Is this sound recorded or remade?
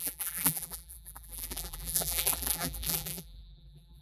remade